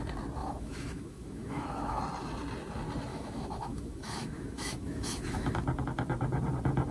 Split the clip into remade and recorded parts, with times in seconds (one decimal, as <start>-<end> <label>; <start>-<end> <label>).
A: 0.0-0.4 recorded; 0.4-2.0 remade; 2.0-3.1 recorded; 3.1-5.5 remade; 5.5-6.9 recorded